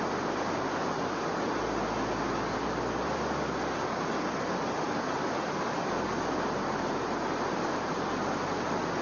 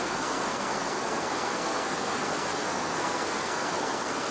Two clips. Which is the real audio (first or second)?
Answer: first